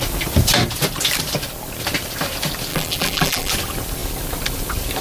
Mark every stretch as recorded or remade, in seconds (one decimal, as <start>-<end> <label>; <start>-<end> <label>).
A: 0.0-2.7 recorded; 2.7-3.5 remade; 3.5-5.0 recorded